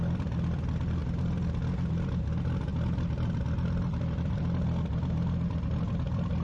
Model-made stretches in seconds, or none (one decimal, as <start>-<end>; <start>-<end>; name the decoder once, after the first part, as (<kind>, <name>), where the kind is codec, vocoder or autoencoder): 0.0-1.0 (vocoder, BigVGAN v2); 2.1-6.4